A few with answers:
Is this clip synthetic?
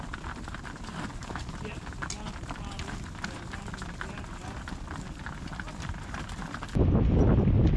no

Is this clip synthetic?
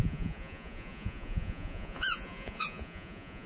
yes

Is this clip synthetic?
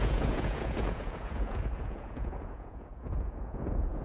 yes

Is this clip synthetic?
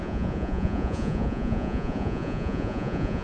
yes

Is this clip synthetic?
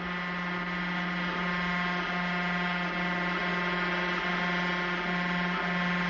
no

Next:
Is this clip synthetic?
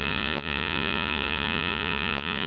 yes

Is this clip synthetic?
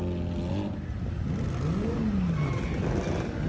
no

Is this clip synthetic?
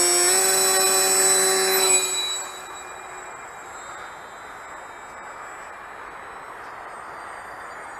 no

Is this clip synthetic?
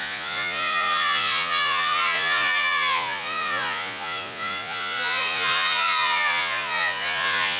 yes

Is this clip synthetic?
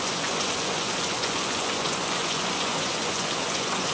yes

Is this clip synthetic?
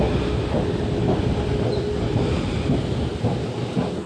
no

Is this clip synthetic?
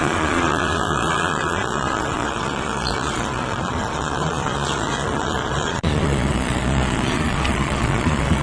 yes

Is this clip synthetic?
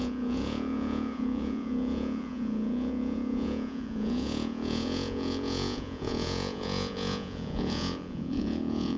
yes